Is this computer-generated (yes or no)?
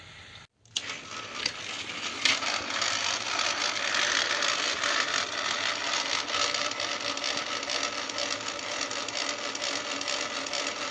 no